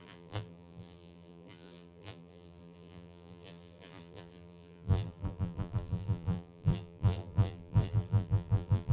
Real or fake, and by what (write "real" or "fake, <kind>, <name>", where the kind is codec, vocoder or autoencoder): fake, vocoder, BigVGAN v2